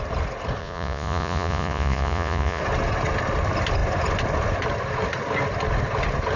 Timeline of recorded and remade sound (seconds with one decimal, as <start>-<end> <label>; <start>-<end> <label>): 0.0-0.6 recorded; 0.6-2.6 remade; 2.6-6.4 recorded